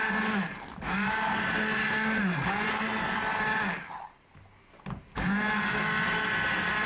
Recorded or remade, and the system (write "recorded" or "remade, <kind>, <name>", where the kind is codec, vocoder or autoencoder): recorded